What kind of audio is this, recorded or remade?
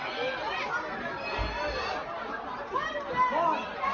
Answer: recorded